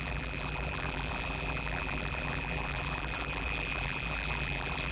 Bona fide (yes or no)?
no